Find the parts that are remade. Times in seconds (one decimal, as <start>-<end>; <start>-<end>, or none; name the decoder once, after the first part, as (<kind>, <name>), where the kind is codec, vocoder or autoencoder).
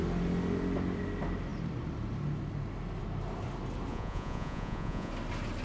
3.9-5.1 (vocoder, Vocos)